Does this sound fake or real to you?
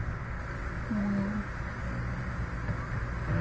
real